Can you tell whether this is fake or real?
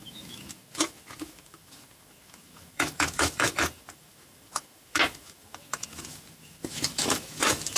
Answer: fake